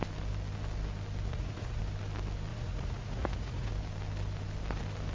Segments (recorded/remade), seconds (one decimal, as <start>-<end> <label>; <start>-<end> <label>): 0.0-1.3 recorded; 1.3-1.8 remade; 1.8-2.5 recorded; 2.5-3.7 remade; 3.7-5.1 recorded